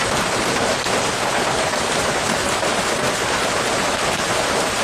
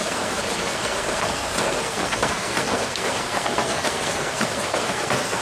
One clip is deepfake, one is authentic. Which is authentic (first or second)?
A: first